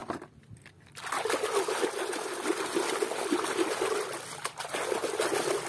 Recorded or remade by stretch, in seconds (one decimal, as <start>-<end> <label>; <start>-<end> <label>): 0.0-5.7 recorded